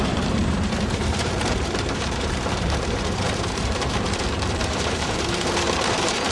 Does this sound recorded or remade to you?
remade